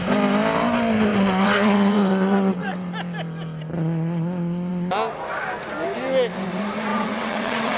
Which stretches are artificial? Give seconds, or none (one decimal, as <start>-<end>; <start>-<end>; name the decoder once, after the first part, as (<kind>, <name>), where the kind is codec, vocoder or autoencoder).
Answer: 1.1-2.9 (vocoder, WaveNeXt); 6.9-7.8